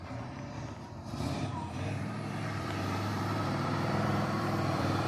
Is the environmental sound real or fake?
fake